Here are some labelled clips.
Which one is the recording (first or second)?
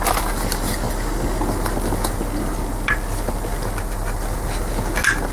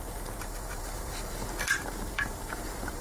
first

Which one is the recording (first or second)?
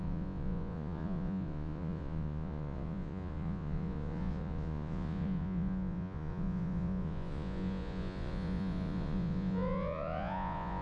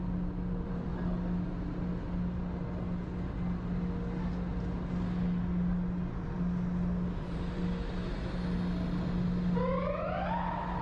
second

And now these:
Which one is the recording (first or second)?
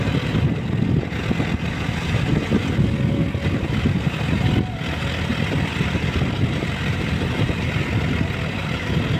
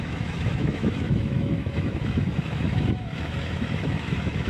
first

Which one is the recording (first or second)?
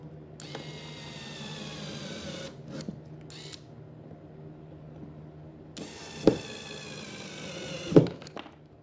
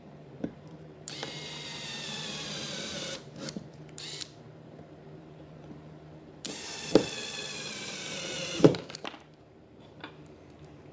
first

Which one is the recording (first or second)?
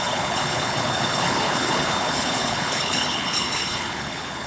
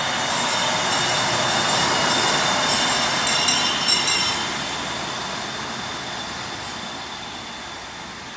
second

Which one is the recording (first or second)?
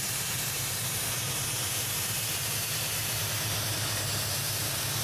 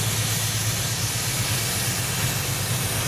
second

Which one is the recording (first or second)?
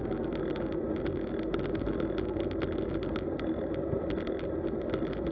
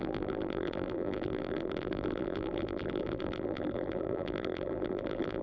first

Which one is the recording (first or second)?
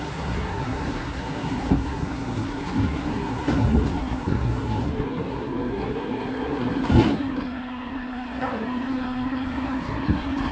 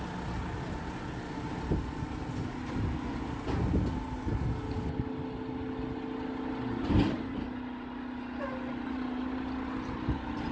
second